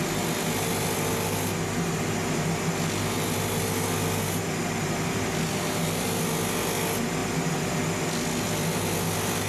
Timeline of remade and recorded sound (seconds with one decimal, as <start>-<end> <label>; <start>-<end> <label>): 0.0-9.5 recorded

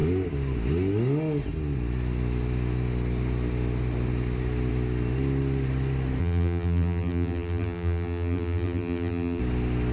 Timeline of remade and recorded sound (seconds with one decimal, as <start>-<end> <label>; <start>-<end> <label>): 0.0-6.2 recorded; 6.2-9.4 remade; 9.4-9.9 recorded

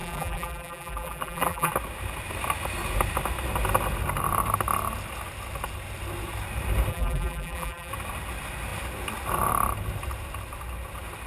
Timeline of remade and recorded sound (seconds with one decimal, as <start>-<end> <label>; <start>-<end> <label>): 0.0-1.7 remade; 1.7-6.9 recorded; 6.9-7.9 remade; 7.9-11.3 recorded

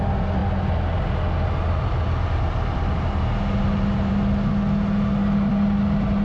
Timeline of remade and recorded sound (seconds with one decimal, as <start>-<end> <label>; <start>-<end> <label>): 0.0-6.2 recorded

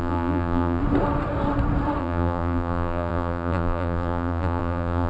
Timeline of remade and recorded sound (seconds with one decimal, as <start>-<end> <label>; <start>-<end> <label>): 0.0-0.8 remade; 0.8-2.0 recorded; 2.0-5.1 remade

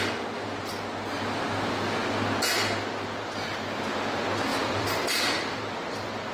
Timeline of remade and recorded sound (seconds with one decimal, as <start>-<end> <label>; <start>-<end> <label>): 0.0-4.5 recorded; 4.5-5.6 remade; 5.6-6.3 recorded

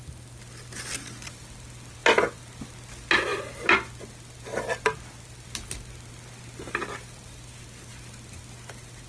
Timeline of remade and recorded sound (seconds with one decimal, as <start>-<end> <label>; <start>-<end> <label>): 0.0-9.1 recorded